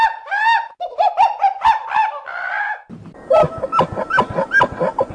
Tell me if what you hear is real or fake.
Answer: real